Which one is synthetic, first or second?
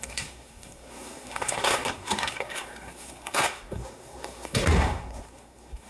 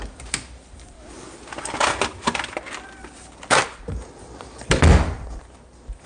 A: first